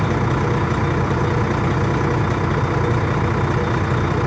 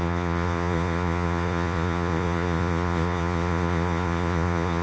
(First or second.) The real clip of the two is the first